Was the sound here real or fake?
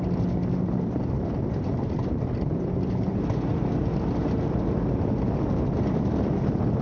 real